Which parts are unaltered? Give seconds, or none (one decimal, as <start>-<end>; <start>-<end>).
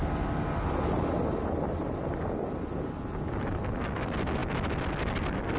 0.0-5.6